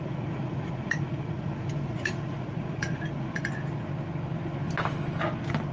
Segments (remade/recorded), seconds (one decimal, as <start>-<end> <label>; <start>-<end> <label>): 0.0-3.4 remade; 3.4-5.7 recorded